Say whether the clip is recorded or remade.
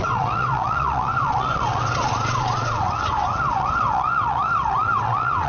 remade